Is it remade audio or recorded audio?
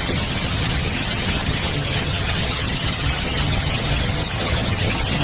remade